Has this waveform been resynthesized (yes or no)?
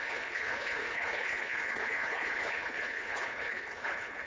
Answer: yes